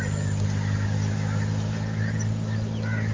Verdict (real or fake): real